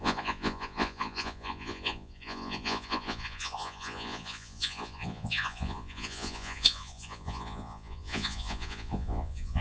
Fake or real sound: fake